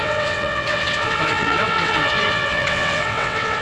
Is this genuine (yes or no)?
no